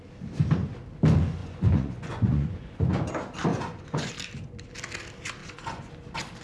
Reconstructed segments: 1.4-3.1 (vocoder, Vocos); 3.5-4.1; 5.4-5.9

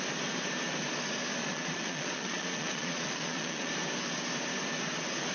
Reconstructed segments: 1.4-3.7 (vocoder, Vocos)

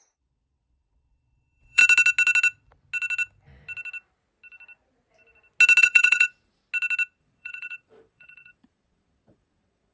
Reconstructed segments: 0.0-1.8 (vocoder, Vocos); 5.8-6.6; 7.2-9.9

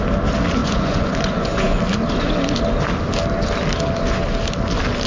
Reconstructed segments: 0.6-1.8 (vocoder, Vocos)

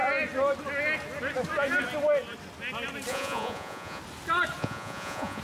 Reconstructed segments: 3.1-4.0 (vocoder, Vocos); 4.6-5.4

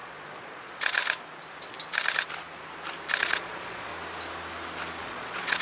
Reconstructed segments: 0.0-1.0 (vocoder, Vocos); 3.2-3.9; 5.0-5.6

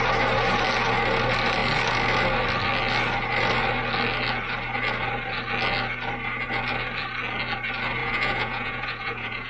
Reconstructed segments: 8.0-9.5 (vocoder, Vocos)